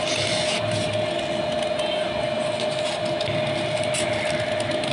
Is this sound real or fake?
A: real